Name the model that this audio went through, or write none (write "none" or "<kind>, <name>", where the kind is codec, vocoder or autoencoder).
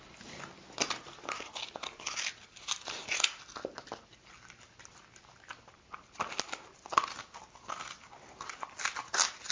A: none